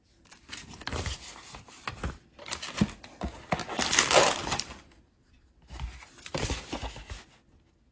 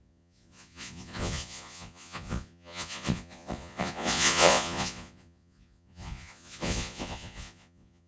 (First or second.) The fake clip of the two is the second